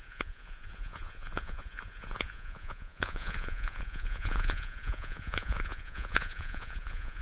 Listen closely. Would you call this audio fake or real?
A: fake